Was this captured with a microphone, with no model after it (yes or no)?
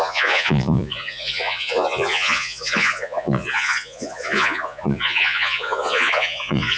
no